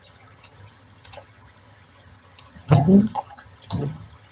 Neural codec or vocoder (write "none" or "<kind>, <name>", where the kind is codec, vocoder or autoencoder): vocoder, HiFi-GAN